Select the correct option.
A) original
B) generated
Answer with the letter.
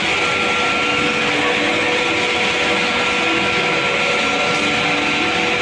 A